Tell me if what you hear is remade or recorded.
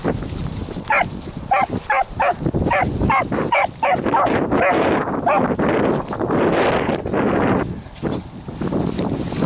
recorded